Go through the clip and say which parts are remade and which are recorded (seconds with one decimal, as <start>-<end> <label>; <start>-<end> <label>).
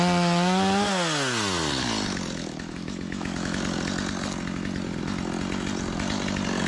0.0-2.4 recorded; 2.4-3.6 remade; 3.6-6.7 recorded